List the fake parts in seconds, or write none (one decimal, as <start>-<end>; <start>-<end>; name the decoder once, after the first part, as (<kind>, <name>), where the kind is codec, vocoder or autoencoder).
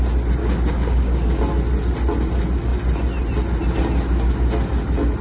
0.4-1.4 (codec, DAC)